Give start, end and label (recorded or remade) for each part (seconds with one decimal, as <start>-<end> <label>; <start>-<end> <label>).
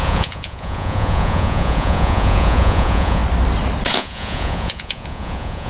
0.0-3.2 remade; 3.2-3.9 recorded; 3.9-5.7 remade